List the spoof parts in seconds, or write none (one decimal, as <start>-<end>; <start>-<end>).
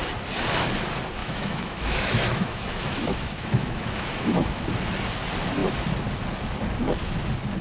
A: 1.2-4.6